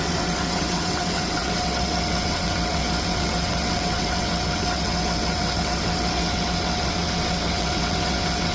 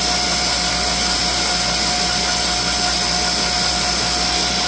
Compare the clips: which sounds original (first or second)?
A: second